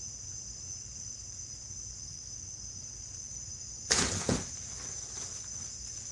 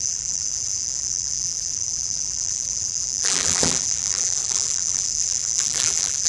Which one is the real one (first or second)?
first